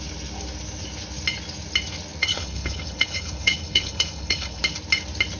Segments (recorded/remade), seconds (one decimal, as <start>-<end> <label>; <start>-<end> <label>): 0.0-2.2 recorded; 2.2-4.6 remade; 4.6-5.4 recorded